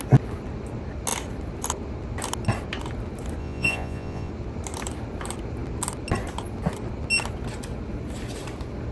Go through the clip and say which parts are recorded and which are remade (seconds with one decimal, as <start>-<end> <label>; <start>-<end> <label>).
0.0-3.4 recorded; 3.4-4.3 remade; 4.3-8.9 recorded